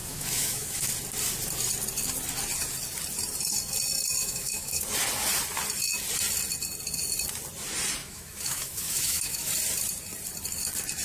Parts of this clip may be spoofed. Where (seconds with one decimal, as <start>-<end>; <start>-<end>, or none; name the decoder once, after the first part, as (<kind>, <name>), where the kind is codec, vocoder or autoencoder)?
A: 0.0-0.9 (autoencoder, DAC-VAE); 4.2-4.8; 8.0-9.5